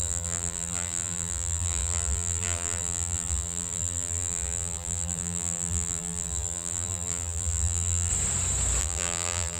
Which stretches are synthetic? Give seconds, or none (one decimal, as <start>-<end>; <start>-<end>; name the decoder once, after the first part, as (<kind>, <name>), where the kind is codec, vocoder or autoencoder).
0.0-8.1 (vocoder, BigVGAN v2); 8.8-9.6